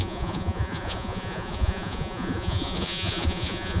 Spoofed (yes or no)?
yes